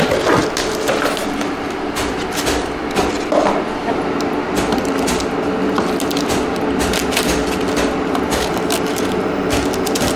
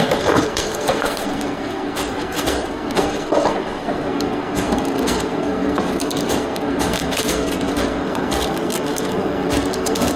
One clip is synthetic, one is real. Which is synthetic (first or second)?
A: second